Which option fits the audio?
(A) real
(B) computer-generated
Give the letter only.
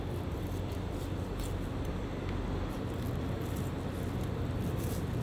A